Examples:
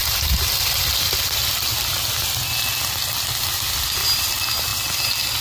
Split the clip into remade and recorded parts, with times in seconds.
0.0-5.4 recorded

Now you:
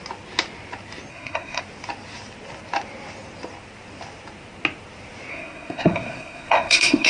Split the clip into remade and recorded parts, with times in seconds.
0.0-1.1 recorded; 1.1-1.6 remade; 1.6-5.3 recorded; 5.3-7.1 remade

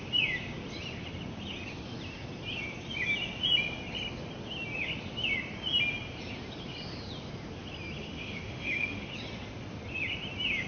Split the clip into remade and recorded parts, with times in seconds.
0.0-8.0 recorded; 8.0-9.1 remade; 9.1-10.7 recorded

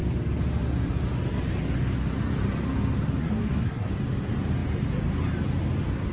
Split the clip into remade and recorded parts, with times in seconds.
0.0-3.2 recorded; 3.2-3.9 remade; 3.9-6.1 recorded

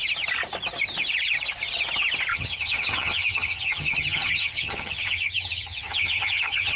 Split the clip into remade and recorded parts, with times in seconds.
0.0-2.3 recorded; 2.3-6.8 remade

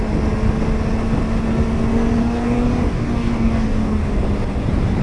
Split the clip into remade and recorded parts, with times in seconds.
0.0-2.2 recorded; 2.2-4.2 remade; 4.2-5.0 recorded

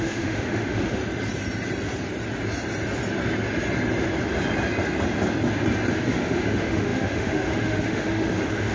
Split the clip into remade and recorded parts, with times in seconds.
0.0-1.0 remade; 1.0-5.9 recorded; 5.9-8.7 remade

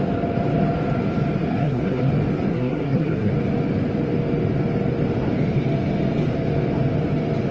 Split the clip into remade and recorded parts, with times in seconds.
0.0-1.5 recorded; 1.5-2.1 remade; 2.1-2.5 recorded; 2.5-3.3 remade; 3.3-7.5 recorded